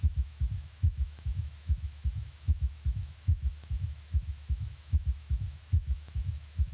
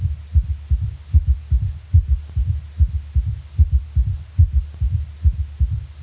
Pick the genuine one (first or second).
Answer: second